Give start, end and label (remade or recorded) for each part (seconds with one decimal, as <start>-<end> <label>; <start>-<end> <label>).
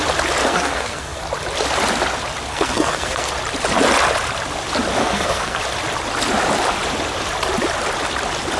0.0-0.4 recorded; 0.4-1.2 remade; 1.2-2.5 recorded; 2.5-3.3 remade; 3.3-5.0 recorded; 5.0-5.6 remade; 5.6-8.6 recorded